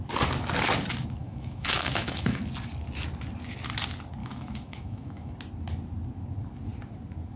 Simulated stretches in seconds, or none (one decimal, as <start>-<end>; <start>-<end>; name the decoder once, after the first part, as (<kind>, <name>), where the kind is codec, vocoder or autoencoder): 1.2-2.4 (autoencoder, DAC-VAE); 4.2-5.3

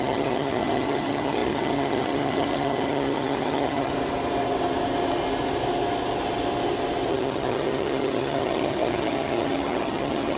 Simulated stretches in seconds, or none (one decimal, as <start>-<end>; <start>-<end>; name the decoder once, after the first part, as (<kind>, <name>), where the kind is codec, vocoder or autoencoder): 0.0-3.9 (vocoder, HiFi-GAN); 7.1-10.4

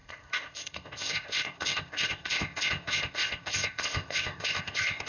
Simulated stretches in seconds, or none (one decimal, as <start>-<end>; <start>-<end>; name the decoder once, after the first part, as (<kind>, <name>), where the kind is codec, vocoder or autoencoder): 0.0-5.1 (codec, ZipCodec)